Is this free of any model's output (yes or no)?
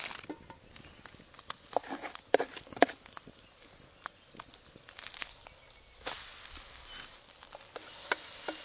yes